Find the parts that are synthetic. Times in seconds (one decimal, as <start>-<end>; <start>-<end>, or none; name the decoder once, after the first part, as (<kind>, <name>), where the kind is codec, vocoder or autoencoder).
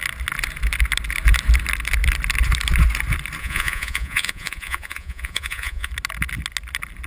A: 3.4-5.9 (vocoder, Vocos)